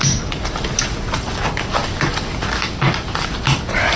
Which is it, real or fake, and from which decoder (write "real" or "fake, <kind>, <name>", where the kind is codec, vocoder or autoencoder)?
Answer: real